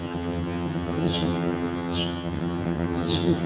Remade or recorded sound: remade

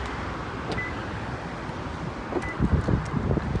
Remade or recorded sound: recorded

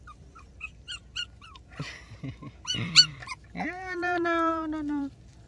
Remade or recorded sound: remade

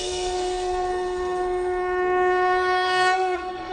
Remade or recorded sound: remade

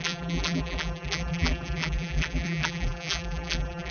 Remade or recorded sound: remade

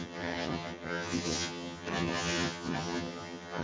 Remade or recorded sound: remade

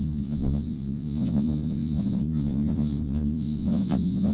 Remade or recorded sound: remade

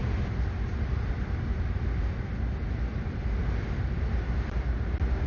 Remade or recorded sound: recorded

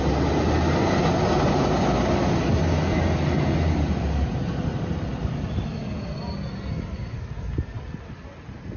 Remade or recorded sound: recorded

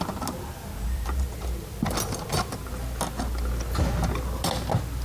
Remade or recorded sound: recorded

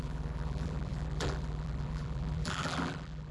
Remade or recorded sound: remade